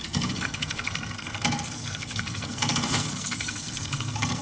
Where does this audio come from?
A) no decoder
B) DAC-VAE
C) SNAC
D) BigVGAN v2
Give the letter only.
C